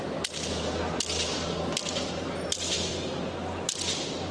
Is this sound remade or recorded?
recorded